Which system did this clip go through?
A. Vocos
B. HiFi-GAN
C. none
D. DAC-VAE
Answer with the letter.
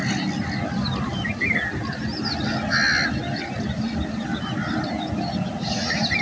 C